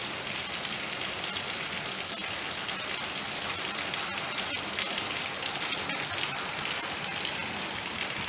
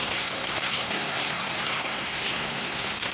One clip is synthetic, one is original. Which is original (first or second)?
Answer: first